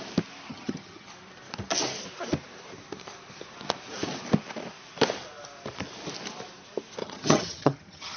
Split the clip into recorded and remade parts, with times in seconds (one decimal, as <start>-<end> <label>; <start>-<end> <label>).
0.0-0.5 recorded; 0.5-1.1 remade; 1.1-7.0 recorded; 7.0-8.2 remade